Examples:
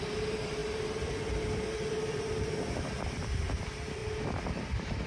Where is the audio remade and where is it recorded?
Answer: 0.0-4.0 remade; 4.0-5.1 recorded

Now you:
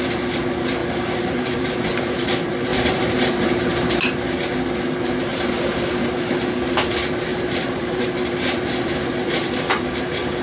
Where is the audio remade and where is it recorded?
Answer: 0.0-0.8 recorded; 0.8-2.3 remade; 2.3-2.7 recorded; 2.7-4.0 remade; 4.0-5.3 recorded; 5.3-6.4 remade; 6.4-7.3 recorded; 7.3-9.1 remade; 9.1-10.4 recorded